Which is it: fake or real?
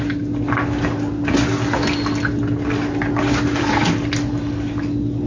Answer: real